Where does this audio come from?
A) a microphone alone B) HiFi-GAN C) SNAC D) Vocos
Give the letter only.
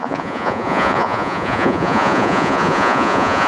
D